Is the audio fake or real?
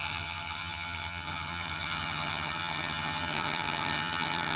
fake